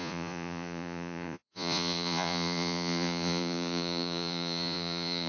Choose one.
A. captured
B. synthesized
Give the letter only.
B